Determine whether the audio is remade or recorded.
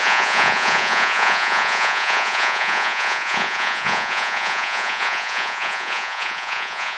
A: remade